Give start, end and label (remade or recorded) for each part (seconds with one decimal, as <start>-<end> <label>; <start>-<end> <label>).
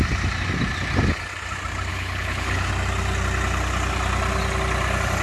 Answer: 0.0-1.9 recorded; 1.9-2.7 remade; 2.7-5.2 recorded